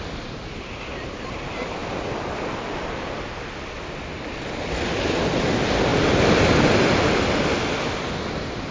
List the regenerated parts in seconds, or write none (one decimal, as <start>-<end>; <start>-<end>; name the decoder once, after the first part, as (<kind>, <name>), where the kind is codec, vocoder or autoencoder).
none